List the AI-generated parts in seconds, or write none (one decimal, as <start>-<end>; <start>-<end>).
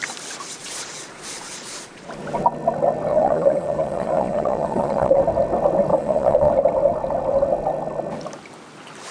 0.6-2.1; 3.1-5.2; 5.9-6.5